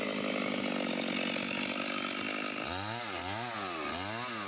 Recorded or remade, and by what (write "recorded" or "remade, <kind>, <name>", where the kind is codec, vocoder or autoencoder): recorded